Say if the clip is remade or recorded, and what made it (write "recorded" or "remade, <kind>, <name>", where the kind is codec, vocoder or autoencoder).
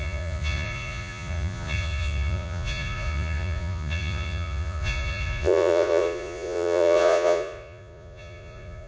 remade, vocoder, Vocos